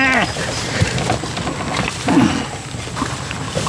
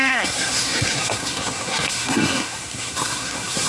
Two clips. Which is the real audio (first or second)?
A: first